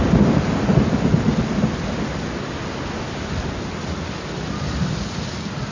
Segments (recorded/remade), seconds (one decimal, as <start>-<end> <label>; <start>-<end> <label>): 0.0-5.7 recorded